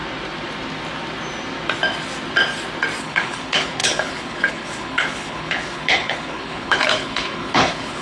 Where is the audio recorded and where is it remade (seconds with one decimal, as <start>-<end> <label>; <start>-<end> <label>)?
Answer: 0.0-3.0 recorded; 3.0-8.0 remade